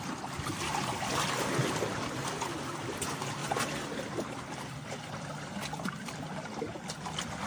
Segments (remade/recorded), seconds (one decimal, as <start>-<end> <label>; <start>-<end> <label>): 0.0-3.4 recorded; 3.4-5.7 remade; 5.7-7.5 recorded